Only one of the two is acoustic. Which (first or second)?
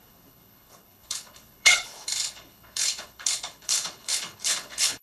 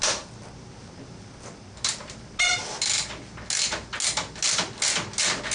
second